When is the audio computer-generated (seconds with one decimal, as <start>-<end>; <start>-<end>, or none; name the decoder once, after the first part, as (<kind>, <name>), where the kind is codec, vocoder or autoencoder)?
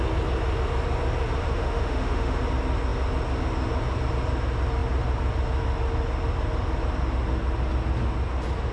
1.4-2.4 (autoencoder, DAC-VAE)